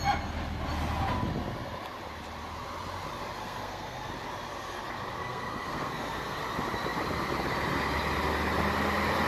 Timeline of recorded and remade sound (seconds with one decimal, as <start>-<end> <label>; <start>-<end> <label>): 0.0-3.4 recorded; 3.4-4.1 remade; 4.1-5.2 recorded; 5.2-6.4 remade; 6.4-9.3 recorded